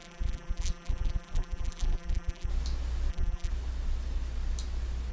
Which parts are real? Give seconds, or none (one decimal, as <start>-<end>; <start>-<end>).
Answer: 2.5-3.1; 3.5-5.1